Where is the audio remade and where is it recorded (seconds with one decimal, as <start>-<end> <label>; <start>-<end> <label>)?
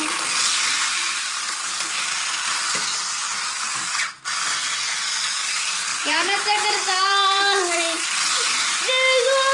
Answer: 0.0-0.9 recorded; 0.9-2.2 remade; 2.2-3.2 recorded; 3.2-3.9 remade; 3.9-5.9 recorded; 5.9-8.9 remade; 8.9-9.5 recorded